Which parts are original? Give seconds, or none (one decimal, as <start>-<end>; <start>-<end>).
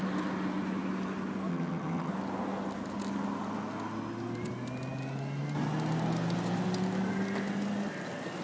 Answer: 0.0-1.5; 2.1-8.4